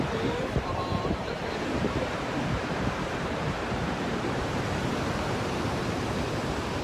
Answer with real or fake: fake